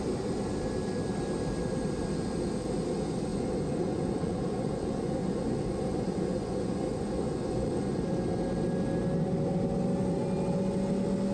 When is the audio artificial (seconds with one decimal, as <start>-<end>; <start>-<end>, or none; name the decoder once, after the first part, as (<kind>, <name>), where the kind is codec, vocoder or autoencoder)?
3.3-8.2 (vocoder, Vocos)

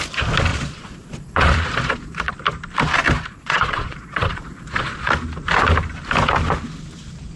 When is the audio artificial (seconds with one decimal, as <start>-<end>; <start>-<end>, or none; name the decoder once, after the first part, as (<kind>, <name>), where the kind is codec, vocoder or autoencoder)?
0.5-2.3 (vocoder, Vocos); 3.3-5.1

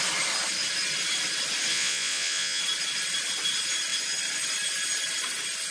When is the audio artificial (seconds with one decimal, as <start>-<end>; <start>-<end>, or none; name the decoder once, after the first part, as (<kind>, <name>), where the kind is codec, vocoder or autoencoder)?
1.7-2.6 (vocoder, Vocos)

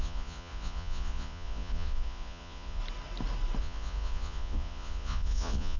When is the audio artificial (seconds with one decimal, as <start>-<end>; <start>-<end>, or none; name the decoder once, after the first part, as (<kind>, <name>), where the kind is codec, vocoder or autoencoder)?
0.0-2.8 (vocoder, Vocos); 3.6-5.8

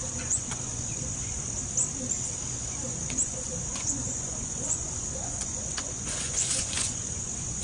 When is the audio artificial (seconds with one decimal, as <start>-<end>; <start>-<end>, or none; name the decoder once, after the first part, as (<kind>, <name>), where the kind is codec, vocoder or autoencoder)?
0.0-1.4 (vocoder, Vocos); 2.5-7.6

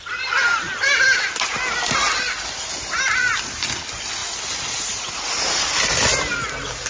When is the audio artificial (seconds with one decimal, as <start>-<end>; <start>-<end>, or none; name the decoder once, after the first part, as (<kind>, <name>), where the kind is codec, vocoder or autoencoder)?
none